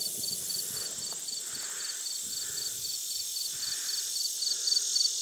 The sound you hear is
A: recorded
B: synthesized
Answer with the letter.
A